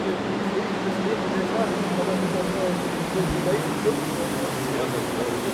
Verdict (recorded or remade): remade